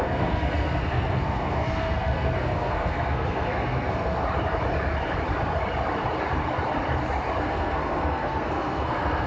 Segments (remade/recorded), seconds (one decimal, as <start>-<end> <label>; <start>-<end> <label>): 0.0-4.2 remade; 4.2-7.4 recorded; 7.4-9.3 remade